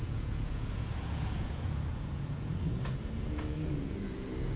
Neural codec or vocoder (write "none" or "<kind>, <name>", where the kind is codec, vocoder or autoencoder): vocoder, Vocos